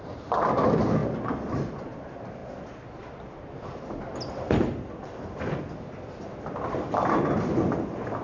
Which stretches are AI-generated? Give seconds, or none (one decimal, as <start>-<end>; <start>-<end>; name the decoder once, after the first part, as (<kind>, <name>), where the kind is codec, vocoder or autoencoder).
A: none